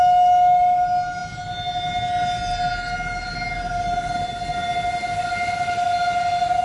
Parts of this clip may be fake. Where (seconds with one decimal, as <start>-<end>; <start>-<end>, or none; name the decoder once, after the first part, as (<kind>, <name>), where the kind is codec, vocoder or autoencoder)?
none

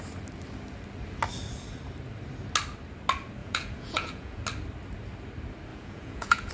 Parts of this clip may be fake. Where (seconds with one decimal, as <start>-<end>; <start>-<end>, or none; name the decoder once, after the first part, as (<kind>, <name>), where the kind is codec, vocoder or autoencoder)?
3.4-4.4 (vocoder, Vocos); 5.7-6.5

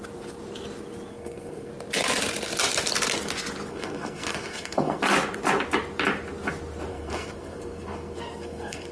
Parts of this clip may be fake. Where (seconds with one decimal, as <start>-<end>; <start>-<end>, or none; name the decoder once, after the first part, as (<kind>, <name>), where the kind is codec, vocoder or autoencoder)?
1.1-1.7 (codec, SNAC); 3.7-5.0; 6.9-8.9

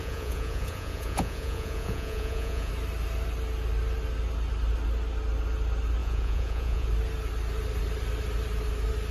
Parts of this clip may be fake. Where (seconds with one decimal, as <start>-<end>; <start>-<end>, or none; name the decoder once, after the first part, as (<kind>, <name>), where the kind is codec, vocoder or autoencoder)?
0.0-2.7 (vocoder, Vocos); 6.0-6.9

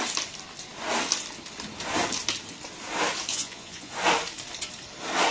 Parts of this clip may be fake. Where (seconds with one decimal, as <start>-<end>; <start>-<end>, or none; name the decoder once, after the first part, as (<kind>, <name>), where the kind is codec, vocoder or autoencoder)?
3.3-3.9 (vocoder, Vocos)

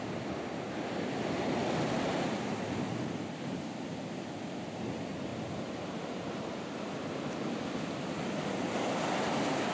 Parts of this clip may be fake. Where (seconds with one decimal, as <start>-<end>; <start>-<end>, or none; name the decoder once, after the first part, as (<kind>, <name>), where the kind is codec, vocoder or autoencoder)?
none